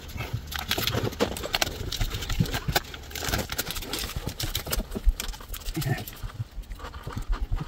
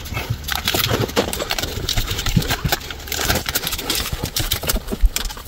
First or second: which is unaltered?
first